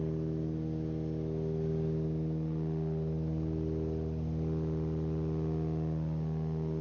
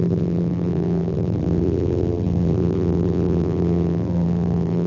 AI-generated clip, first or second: second